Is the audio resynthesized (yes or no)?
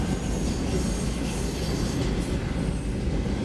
no